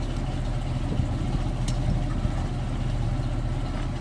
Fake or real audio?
real